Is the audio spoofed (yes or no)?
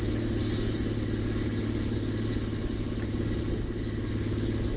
no